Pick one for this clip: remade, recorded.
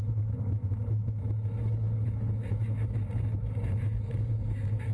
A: remade